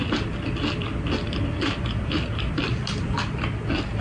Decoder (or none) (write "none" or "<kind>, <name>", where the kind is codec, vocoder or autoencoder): none